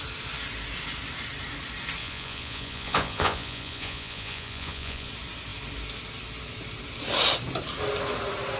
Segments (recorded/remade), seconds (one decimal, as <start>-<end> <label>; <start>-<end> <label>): 0.0-2.0 recorded; 2.0-5.1 remade; 5.1-8.6 recorded